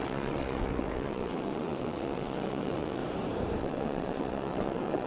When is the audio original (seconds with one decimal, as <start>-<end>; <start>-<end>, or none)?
3.0-3.6